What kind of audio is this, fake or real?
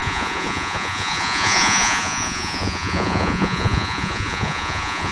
fake